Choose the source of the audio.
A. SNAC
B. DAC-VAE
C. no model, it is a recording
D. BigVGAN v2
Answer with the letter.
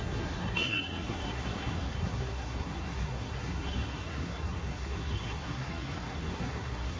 A